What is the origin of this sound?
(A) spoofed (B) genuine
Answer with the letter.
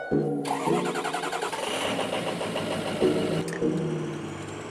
B